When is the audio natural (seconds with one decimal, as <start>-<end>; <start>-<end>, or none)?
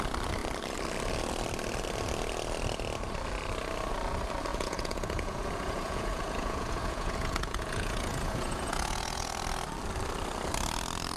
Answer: 0.0-4.5; 9.3-11.2